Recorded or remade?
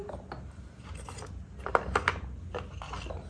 recorded